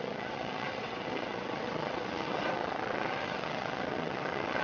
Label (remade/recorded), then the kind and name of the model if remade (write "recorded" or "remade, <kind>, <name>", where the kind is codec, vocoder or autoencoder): remade, vocoder, WaveNeXt